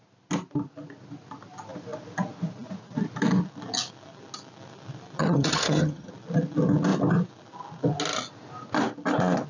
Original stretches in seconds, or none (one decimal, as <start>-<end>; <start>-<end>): 0.0-5.2; 6.1-9.5